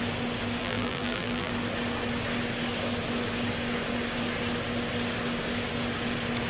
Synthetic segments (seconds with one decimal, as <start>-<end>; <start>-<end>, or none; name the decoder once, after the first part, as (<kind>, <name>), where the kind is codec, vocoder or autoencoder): 0.6-1.5 (vocoder, BigVGAN v2)